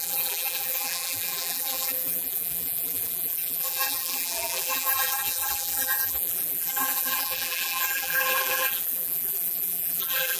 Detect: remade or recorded remade